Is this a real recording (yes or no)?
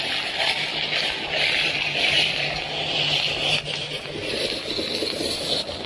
yes